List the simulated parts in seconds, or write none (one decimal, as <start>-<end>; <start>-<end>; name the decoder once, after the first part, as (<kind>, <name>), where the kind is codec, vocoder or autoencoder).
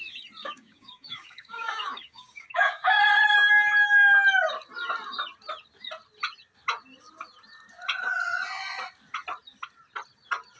0.4-3.0 (codec, DAC)